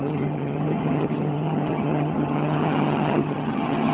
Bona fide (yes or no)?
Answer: no